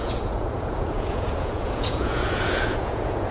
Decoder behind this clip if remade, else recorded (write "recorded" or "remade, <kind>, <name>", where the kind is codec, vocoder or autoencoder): remade, vocoder, Vocos